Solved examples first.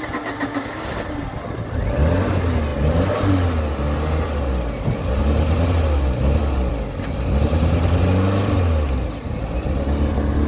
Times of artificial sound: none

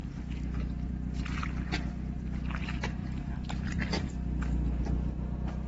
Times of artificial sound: 0.0-0.9 (vocoder, BigVGAN v2); 3.0-4.1

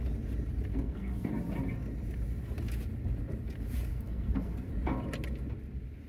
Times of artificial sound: 0.7-1.3 (codec, SNAC); 3.9-4.7

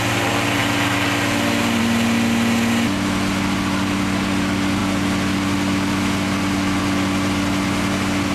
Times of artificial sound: none

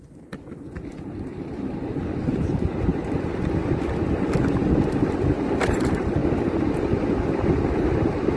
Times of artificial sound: 0.0-2.9 (vocoder, BigVGAN v2); 5.6-6.2; 7.5-8.4